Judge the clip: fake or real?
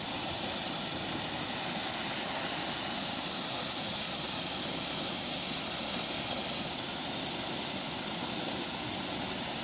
real